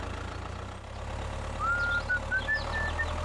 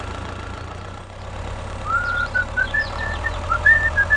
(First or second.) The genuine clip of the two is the first